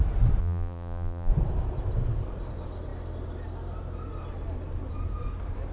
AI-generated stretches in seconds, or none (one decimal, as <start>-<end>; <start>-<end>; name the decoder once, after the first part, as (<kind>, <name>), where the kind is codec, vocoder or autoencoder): 0.4-1.3 (vocoder, BigVGAN v2)